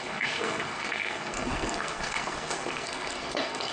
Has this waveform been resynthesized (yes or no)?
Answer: yes